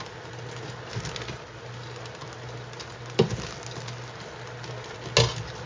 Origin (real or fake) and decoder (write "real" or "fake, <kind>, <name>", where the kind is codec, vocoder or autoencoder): real